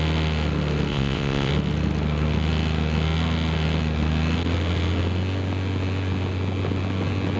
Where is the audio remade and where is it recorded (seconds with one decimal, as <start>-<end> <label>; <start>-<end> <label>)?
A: 0.0-0.9 recorded; 0.9-1.5 remade; 1.5-7.4 recorded